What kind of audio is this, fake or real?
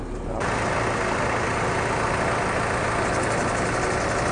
real